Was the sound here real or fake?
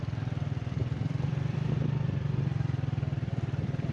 fake